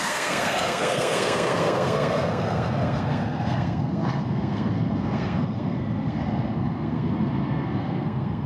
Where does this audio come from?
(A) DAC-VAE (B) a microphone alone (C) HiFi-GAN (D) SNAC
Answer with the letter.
D